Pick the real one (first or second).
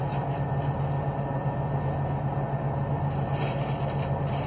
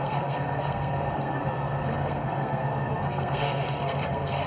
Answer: first